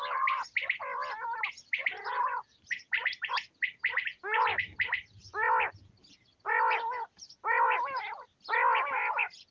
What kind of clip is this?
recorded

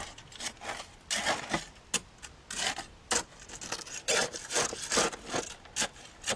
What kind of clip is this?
recorded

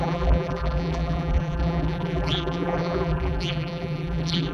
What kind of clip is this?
remade